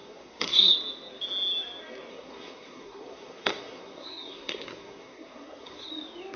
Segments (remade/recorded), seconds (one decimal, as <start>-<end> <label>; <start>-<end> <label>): 0.0-0.7 remade; 0.7-2.1 recorded; 2.1-5.9 remade; 5.9-6.4 recorded